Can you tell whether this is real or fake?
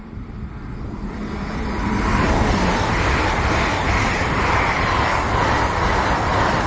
real